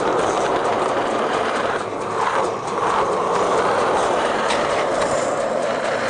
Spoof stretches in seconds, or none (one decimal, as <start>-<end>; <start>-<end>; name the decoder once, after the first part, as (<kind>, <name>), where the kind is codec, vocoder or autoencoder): 0.0-6.1 (vocoder, BigVGAN v2)